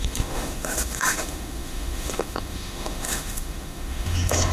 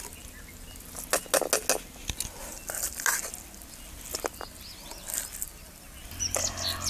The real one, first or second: second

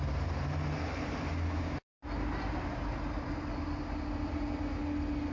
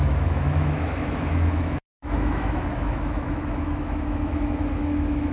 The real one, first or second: first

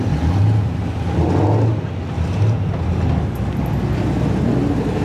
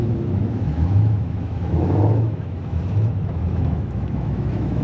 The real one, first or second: first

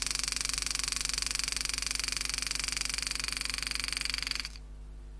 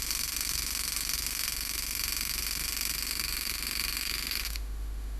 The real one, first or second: first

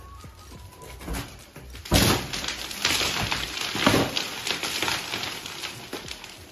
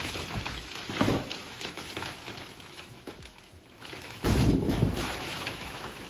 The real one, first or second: first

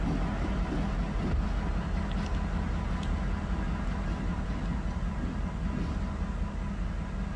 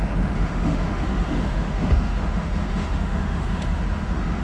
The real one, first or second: first